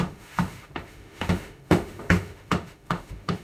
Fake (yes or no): yes